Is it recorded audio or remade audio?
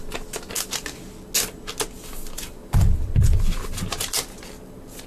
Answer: recorded